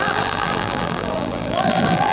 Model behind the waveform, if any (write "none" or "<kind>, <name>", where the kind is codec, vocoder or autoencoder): vocoder, BigVGAN v2